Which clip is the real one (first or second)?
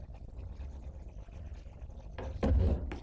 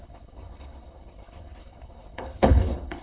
first